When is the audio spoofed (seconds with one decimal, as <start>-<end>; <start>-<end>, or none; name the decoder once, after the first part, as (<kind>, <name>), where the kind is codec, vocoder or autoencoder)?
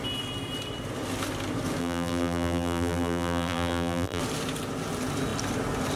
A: 1.8-4.2 (vocoder, BigVGAN v2)